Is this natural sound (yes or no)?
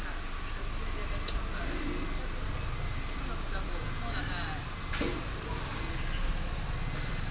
yes